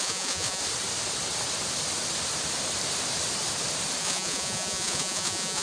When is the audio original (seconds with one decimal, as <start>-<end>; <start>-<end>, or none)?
0.6-4.0